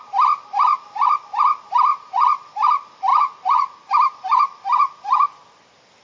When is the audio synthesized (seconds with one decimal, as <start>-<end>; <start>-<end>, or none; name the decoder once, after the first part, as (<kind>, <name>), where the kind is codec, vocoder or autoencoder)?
1.9-2.5 (vocoder, Vocos); 3.1-3.9